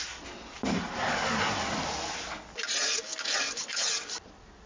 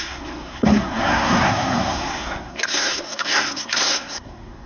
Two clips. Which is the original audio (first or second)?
first